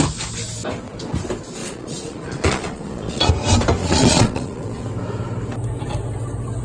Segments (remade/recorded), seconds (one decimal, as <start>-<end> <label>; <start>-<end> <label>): 0.0-1.6 recorded; 1.6-3.3 remade; 3.3-3.8 recorded; 3.8-4.8 remade; 4.8-6.6 recorded